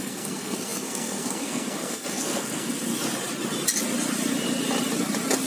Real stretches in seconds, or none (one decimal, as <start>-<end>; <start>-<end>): 2.9-5.5